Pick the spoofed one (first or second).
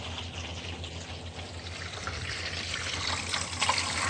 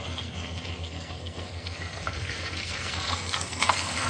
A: second